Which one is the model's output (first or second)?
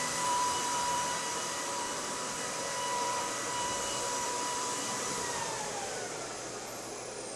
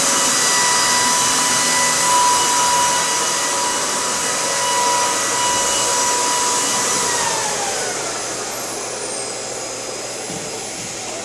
first